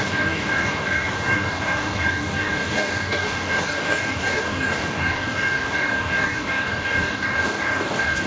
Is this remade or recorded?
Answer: remade